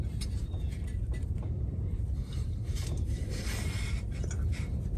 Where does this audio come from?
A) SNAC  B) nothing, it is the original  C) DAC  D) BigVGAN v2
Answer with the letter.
D